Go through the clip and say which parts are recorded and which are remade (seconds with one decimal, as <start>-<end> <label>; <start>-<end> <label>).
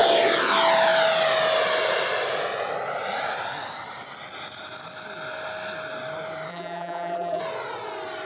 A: 0.0-6.5 recorded; 6.5-7.4 remade; 7.4-8.3 recorded